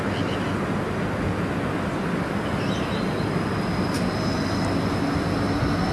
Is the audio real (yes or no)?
yes